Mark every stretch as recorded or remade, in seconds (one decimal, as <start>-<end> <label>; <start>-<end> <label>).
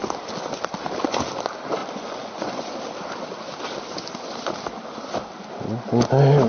0.0-1.8 recorded; 1.8-2.8 remade; 2.8-6.5 recorded